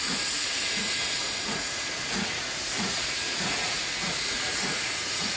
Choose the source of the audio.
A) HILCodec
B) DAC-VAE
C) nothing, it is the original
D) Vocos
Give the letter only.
D